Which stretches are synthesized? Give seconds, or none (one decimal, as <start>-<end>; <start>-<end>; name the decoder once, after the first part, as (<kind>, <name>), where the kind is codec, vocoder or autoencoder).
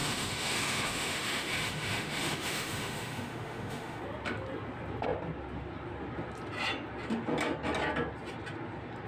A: 0.0-4.0 (autoencoder, DAC-VAE)